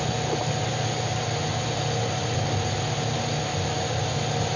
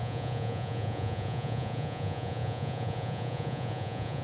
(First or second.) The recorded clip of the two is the first